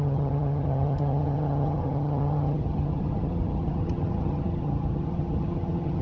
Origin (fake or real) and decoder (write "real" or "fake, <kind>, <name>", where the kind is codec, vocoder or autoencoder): fake, vocoder, HiFi-GAN